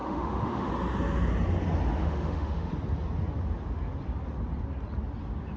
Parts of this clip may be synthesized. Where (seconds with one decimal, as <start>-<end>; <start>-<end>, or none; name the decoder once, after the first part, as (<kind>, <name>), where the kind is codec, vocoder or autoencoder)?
0.0-0.7 (autoencoder, DAC-VAE); 2.0-2.7